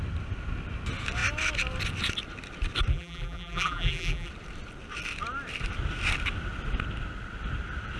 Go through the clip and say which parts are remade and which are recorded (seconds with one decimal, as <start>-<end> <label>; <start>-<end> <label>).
0.0-2.9 recorded; 2.9-4.3 remade; 4.3-8.0 recorded